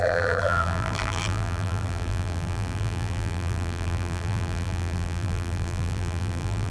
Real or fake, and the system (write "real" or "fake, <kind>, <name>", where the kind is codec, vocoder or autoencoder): fake, vocoder, BigVGAN v2